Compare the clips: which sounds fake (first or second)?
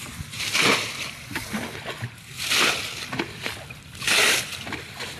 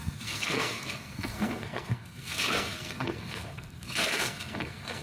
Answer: second